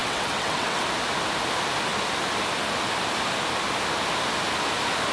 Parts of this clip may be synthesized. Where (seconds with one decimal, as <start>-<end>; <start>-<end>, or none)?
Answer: 0.0-0.8